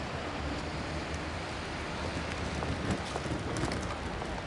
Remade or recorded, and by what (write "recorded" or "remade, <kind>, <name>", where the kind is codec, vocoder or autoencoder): remade, vocoder, BigVGAN v2